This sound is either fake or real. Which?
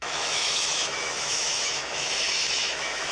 fake